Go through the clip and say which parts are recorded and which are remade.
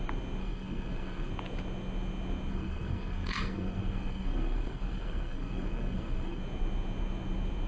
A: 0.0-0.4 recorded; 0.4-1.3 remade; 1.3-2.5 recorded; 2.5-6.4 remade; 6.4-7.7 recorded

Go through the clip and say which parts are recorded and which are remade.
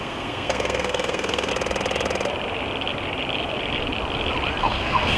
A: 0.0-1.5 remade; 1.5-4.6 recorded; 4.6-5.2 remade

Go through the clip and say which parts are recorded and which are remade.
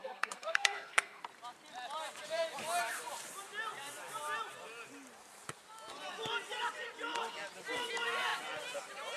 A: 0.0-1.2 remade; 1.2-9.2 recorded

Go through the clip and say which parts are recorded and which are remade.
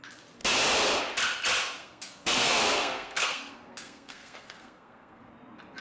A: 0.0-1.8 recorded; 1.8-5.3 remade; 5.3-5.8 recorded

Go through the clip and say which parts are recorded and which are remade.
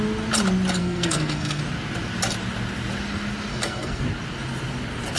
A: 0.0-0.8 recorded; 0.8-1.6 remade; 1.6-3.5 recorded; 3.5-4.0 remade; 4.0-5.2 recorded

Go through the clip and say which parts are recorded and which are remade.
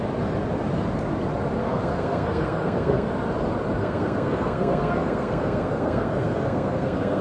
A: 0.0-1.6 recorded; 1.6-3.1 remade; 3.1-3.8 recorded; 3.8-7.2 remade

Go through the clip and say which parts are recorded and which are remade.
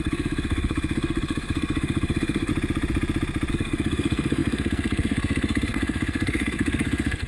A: 0.0-2.5 remade; 2.5-3.5 recorded; 3.5-7.3 remade